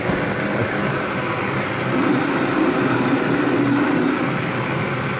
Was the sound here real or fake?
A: real